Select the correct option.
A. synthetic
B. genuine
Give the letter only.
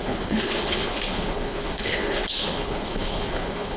A